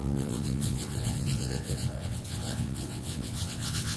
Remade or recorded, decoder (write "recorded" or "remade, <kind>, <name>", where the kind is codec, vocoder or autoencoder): remade, vocoder, WaveNeXt